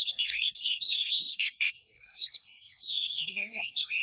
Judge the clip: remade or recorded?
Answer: remade